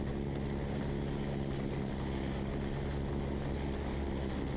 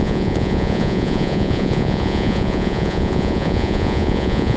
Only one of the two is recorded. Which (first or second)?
first